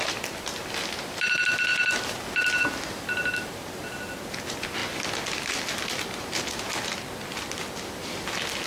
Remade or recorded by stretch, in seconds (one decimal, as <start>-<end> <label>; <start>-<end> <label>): 0.0-1.7 recorded; 1.7-2.6 remade; 2.6-8.7 recorded